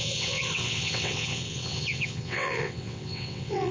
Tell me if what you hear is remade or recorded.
remade